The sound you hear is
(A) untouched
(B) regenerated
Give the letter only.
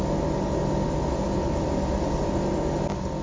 A